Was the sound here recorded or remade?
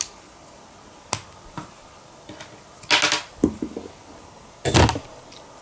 recorded